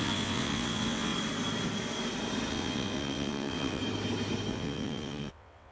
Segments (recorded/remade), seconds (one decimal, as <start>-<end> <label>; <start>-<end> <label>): 0.0-1.1 remade; 1.1-2.5 recorded; 2.5-3.8 remade; 3.8-4.5 recorded; 4.5-5.7 remade

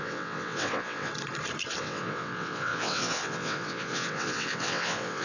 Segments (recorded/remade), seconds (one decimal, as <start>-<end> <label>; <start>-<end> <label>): 0.0-1.1 remade; 1.1-1.8 recorded; 1.8-5.2 remade

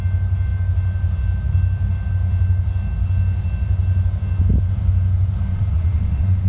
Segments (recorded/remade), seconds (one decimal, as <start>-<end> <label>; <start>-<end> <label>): 0.0-5.5 recorded; 5.5-6.5 remade

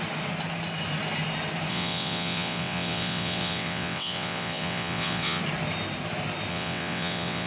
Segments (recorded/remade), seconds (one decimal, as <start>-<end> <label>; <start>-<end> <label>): 0.0-1.7 recorded; 1.7-5.4 remade; 5.4-6.5 recorded; 6.5-7.5 remade

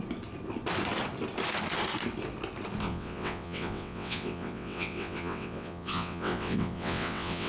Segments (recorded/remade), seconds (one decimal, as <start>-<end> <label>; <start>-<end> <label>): 0.0-2.8 recorded; 2.8-7.5 remade